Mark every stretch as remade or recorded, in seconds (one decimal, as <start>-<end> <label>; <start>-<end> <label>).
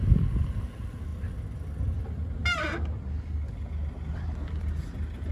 0.0-5.3 recorded